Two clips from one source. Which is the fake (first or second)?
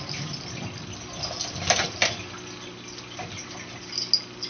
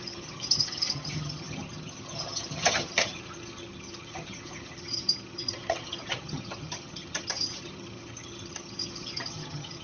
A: second